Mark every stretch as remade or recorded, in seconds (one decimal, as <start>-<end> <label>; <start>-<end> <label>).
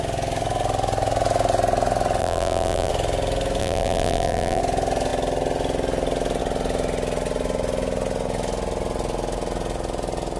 0.0-2.2 recorded; 2.2-2.9 remade; 2.9-3.6 recorded; 3.6-4.6 remade; 4.6-10.4 recorded